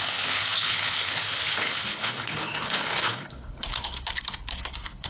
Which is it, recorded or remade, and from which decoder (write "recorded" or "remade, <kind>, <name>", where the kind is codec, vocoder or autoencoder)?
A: remade, codec, HILCodec